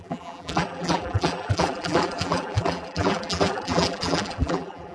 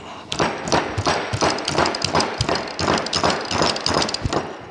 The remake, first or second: first